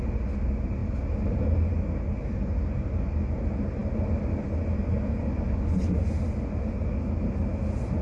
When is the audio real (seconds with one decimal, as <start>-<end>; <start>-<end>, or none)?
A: 0.0-8.0